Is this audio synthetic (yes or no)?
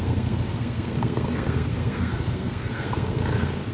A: yes